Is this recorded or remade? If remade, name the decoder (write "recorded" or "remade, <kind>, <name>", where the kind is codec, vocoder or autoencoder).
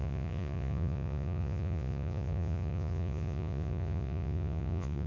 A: remade, vocoder, Vocos